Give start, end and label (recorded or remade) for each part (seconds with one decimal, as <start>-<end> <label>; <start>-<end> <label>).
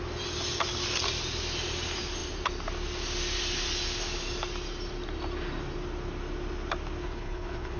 0.0-7.0 recorded; 7.0-7.8 remade